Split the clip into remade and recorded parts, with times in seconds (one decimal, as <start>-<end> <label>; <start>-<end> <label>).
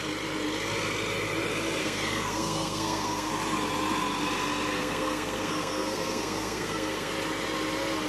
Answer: 0.0-1.8 recorded; 1.8-3.3 remade; 3.3-4.8 recorded; 4.8-7.1 remade; 7.1-8.1 recorded